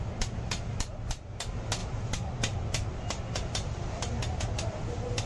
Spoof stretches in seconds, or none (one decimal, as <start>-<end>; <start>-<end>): 1.8-5.3